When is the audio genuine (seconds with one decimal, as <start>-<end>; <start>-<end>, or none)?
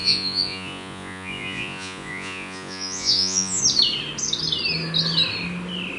3.6-6.0